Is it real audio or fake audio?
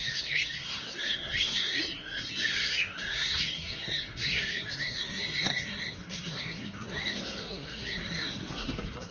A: fake